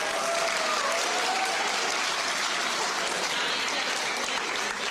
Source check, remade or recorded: recorded